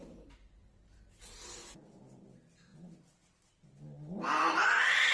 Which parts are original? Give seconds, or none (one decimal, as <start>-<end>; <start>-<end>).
0.0-5.1